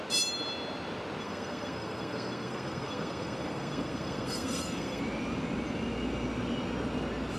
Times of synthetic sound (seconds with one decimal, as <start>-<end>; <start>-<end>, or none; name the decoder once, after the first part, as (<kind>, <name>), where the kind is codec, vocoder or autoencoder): 1.2-5.0 (codec, SNAC)